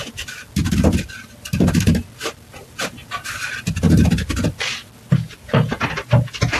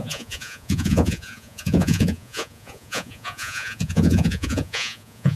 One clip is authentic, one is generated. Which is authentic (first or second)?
first